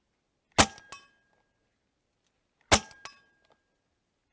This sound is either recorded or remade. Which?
recorded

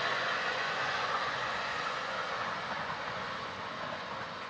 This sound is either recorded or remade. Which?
remade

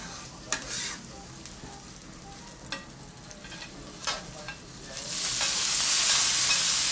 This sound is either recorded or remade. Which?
recorded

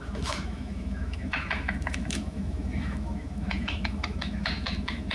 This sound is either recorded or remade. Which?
remade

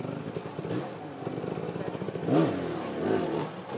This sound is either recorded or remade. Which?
recorded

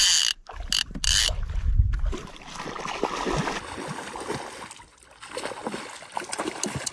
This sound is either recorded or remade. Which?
recorded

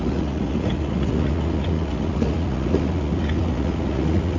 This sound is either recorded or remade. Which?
remade